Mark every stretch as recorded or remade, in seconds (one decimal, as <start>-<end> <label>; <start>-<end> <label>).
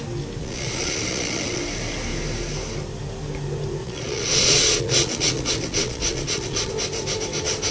0.0-0.4 recorded; 0.4-1.6 remade; 1.6-3.8 recorded; 3.8-6.7 remade; 6.7-7.7 recorded